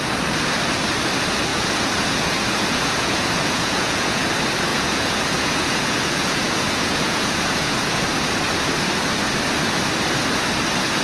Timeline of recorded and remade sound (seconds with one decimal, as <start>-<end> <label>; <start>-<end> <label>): 0.0-1.5 recorded; 1.5-4.3 remade; 4.3-4.7 recorded; 4.7-8.0 remade; 8.0-11.0 recorded